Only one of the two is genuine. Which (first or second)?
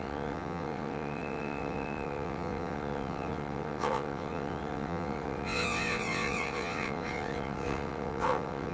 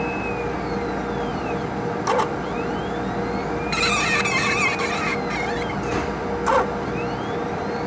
second